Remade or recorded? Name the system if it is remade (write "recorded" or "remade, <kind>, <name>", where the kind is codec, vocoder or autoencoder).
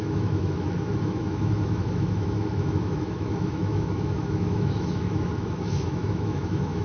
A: remade, autoencoder, DAC-VAE